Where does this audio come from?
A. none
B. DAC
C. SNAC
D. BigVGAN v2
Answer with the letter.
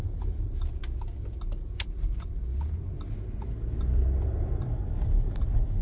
A